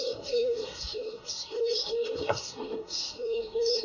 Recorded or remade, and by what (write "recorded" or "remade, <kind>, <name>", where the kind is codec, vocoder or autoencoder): remade, codec, SNAC